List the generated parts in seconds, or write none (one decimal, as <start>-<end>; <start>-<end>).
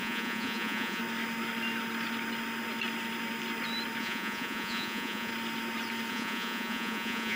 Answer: 0.0-1.0; 4.0-5.3; 6.1-7.4